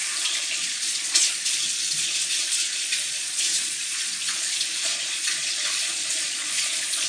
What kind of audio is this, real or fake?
fake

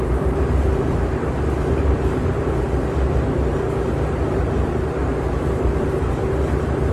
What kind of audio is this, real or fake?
fake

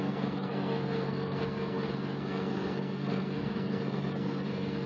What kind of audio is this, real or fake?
fake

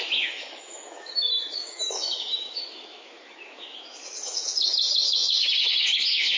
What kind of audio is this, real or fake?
fake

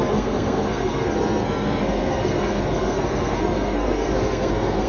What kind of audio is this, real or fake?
fake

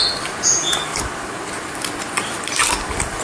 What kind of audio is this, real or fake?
real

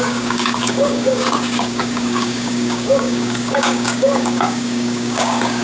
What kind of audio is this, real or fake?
fake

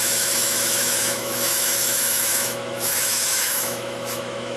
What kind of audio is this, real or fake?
fake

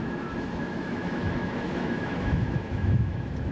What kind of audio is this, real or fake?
fake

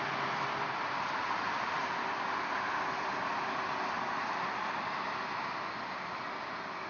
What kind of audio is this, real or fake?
real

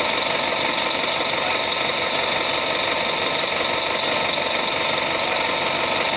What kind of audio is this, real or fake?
real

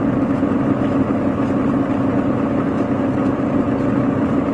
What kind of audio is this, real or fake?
real